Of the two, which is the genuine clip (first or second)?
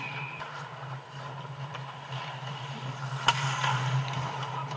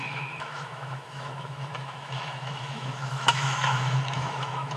first